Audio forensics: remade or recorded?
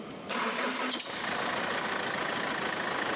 recorded